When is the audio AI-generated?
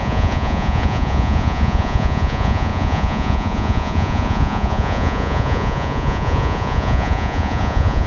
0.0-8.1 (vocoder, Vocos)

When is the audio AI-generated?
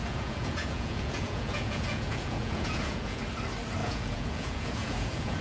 0.0-3.2 (vocoder, Vocos); 3.8-5.4